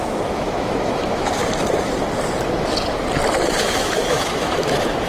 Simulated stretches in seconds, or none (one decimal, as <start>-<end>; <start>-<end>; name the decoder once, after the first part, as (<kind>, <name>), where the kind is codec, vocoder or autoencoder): 0.0-1.4 (autoencoder, DAC-VAE); 3.6-5.1